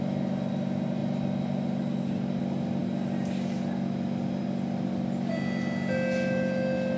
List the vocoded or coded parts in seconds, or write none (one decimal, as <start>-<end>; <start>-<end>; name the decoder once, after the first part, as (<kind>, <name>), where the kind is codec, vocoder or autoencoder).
none